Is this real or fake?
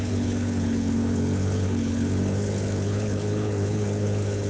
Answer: fake